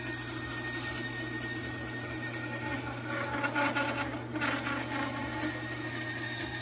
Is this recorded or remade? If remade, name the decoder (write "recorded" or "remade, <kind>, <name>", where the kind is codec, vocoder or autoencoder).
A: recorded